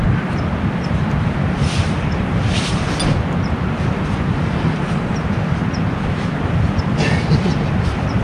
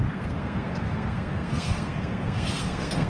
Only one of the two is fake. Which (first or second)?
second